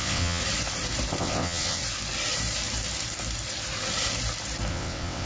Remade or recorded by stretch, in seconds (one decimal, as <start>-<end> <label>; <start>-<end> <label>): 0.0-0.4 remade; 0.4-1.2 recorded; 1.2-1.8 remade; 1.8-4.7 recorded; 4.7-5.3 remade